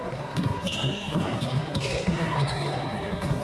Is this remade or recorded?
remade